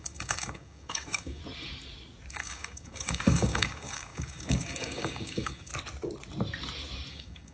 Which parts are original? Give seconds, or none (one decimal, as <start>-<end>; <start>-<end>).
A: 1.4-2.3; 5.7-7.1